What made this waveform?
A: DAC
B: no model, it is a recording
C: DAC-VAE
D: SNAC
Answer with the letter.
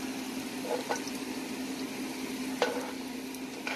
B